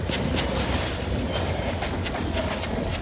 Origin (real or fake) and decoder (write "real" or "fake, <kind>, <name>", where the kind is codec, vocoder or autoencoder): real